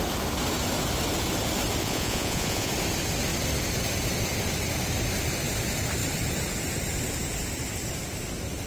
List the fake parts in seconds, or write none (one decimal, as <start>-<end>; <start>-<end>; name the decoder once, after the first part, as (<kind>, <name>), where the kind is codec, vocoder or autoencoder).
1.8-2.7 (vocoder, Vocos)